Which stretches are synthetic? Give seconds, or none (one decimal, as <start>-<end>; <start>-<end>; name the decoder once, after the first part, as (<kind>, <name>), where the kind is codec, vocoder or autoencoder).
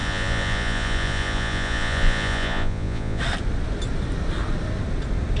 0.0-3.2 (vocoder, Vocos)